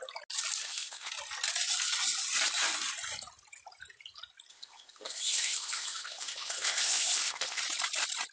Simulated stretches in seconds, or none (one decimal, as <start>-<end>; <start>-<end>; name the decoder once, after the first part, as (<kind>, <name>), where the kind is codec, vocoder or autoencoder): 0.6-1.1 (codec, ZipCodec); 4.5-7.6